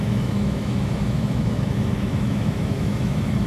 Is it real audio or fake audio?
fake